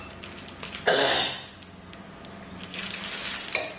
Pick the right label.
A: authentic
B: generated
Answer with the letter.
A